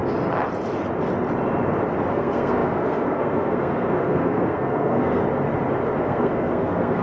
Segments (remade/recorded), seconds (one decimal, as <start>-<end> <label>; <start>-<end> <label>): 0.0-2.1 recorded; 2.1-5.2 remade; 5.2-6.0 recorded; 6.0-7.0 remade